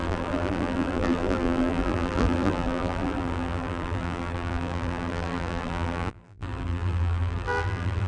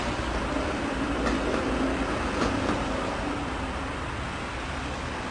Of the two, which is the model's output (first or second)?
first